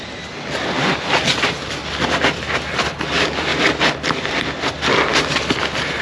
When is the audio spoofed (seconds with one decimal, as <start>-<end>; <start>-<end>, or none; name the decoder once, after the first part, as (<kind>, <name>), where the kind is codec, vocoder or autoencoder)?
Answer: none